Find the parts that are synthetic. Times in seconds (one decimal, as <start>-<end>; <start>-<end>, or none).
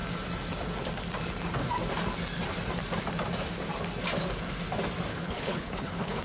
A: 5.1-6.2